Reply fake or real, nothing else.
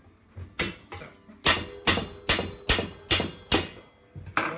real